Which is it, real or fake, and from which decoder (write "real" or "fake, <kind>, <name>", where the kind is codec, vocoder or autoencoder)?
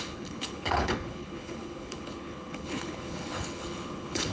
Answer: fake, codec, HILCodec